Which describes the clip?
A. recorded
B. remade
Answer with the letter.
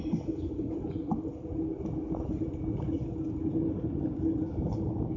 A